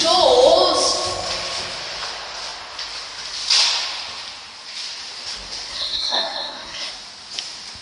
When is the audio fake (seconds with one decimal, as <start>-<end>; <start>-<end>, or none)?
5.7-6.9